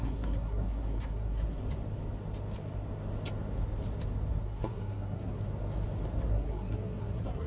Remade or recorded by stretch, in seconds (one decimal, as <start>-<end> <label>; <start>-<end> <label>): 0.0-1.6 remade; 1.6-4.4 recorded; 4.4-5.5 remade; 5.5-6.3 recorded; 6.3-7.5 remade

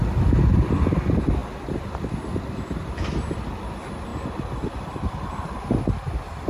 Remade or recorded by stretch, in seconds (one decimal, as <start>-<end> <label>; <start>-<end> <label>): 0.0-6.5 recorded

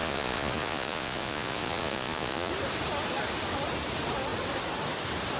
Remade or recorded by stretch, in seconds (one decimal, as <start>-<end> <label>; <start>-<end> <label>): 0.0-2.5 remade; 2.5-5.4 recorded

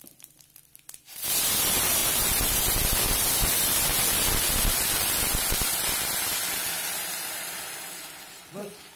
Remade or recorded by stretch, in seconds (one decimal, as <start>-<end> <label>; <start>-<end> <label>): 0.0-2.0 recorded; 2.0-2.6 remade; 2.6-9.0 recorded

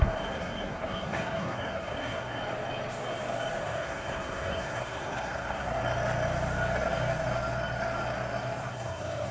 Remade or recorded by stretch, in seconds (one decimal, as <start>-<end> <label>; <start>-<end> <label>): 0.0-2.4 remade; 2.4-3.6 recorded; 3.6-5.8 remade; 5.8-8.7 recorded; 8.7-9.3 remade

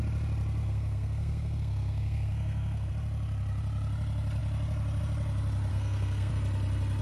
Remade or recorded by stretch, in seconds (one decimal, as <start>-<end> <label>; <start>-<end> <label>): 0.0-0.6 recorded; 0.6-2.9 remade; 2.9-5.7 recorded; 5.7-6.3 remade; 6.3-7.0 recorded